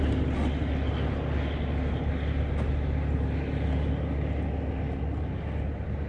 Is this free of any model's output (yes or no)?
yes